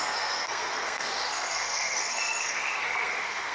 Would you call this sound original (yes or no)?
no